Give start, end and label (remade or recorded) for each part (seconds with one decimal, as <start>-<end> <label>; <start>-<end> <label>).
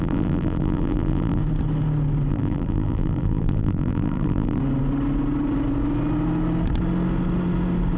0.0-1.4 remade; 1.4-2.3 recorded; 2.3-4.6 remade; 4.6-8.0 recorded